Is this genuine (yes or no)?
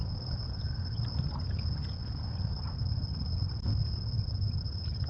yes